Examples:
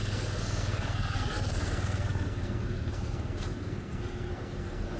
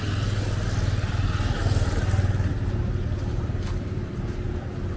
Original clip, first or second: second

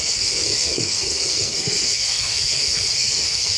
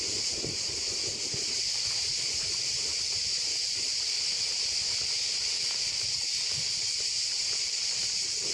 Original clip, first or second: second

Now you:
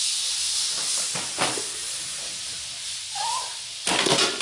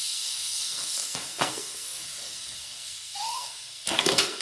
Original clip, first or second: first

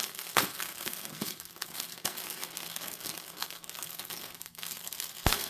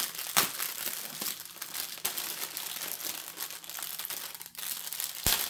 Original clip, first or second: second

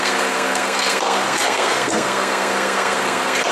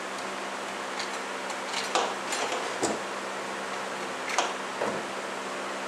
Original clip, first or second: second